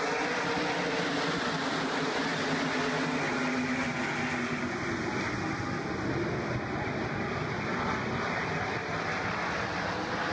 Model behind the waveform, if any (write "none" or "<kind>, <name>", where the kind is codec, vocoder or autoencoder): none